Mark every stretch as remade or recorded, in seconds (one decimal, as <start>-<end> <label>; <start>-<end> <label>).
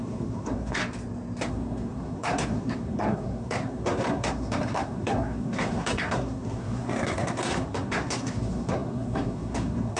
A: 0.0-0.8 remade; 0.8-1.5 recorded; 1.5-10.0 remade